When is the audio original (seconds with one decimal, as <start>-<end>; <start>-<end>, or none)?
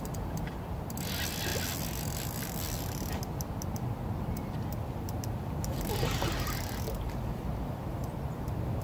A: 0.0-8.8